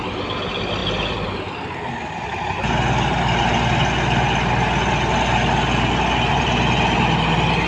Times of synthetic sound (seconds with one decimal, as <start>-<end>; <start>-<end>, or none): none